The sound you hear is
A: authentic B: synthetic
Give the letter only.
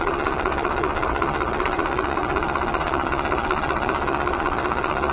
B